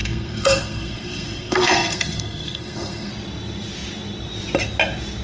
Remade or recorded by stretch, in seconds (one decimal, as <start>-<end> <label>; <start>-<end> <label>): 0.0-3.1 remade; 3.1-5.2 recorded